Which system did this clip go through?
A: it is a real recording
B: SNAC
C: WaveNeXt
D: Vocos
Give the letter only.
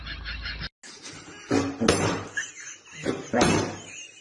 A